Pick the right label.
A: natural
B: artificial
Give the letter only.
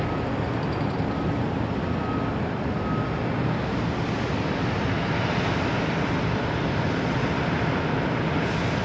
A